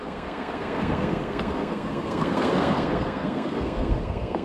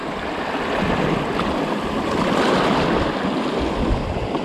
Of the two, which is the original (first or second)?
second